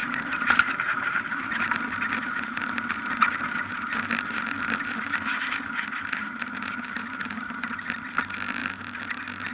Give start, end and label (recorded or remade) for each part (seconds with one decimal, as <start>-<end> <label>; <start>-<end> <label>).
0.0-1.8 remade; 1.8-6.2 recorded; 6.2-7.4 remade; 7.4-9.5 recorded